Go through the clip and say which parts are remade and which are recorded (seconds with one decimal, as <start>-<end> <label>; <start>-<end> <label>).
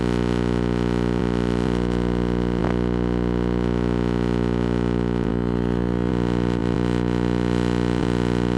0.0-5.3 recorded; 5.3-6.1 remade; 6.1-8.6 recorded